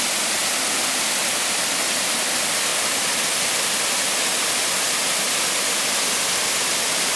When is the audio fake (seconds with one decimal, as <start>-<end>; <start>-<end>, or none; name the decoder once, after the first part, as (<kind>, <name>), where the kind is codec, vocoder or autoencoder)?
none